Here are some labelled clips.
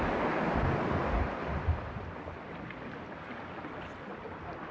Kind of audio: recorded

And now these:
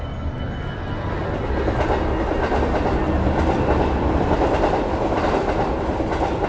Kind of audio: recorded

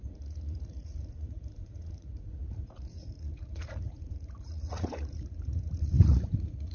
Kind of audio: remade